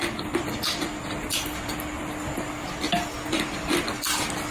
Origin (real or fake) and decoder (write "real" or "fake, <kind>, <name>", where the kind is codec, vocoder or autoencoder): real